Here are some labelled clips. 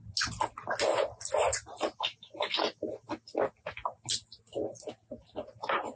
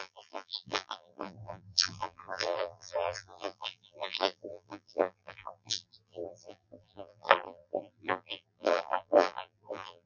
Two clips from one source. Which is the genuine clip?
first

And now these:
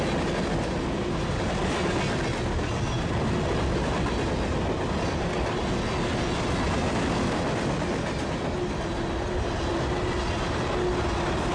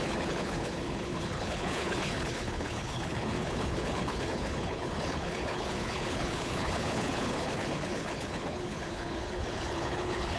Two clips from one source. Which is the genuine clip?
first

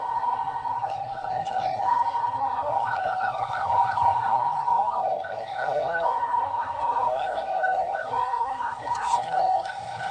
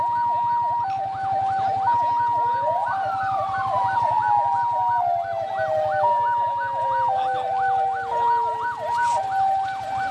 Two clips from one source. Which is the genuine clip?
second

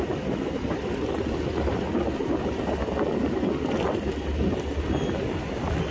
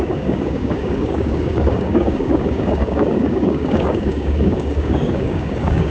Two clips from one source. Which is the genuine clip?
first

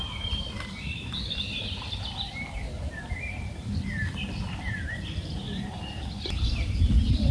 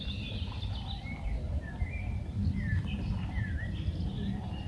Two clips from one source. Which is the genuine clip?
second